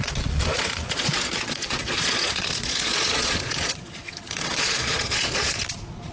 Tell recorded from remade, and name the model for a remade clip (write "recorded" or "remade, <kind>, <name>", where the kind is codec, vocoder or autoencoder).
remade, vocoder, Vocos